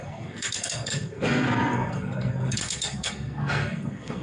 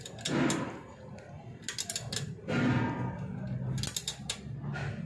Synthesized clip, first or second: first